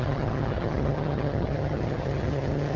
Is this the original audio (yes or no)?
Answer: no